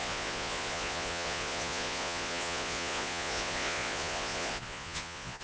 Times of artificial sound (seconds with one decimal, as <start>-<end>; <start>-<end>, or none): 0.0-5.4